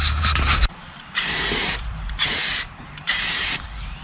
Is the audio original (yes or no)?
no